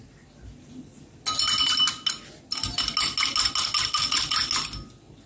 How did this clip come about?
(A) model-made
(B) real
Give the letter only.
B